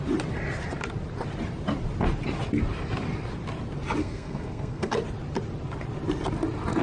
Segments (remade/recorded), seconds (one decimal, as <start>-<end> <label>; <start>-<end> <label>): 0.0-4.0 recorded; 4.0-4.9 remade; 4.9-6.8 recorded